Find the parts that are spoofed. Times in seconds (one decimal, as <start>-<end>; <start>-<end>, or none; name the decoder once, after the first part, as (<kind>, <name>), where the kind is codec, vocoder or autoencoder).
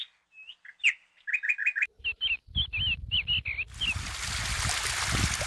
none